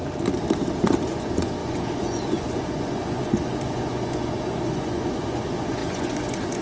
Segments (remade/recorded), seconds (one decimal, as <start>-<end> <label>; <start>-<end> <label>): 0.0-1.1 recorded; 1.1-6.6 remade